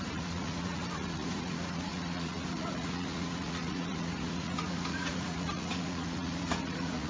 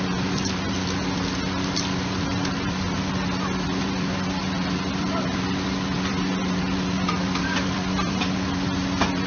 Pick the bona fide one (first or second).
second